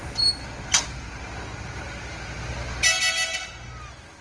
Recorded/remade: recorded